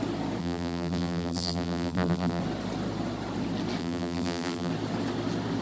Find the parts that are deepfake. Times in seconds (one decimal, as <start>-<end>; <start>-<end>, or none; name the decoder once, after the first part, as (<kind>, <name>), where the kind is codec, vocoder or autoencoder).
0.4-2.4 (vocoder, BigVGAN v2); 3.8-4.7